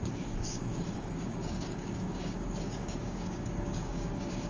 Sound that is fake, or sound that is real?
fake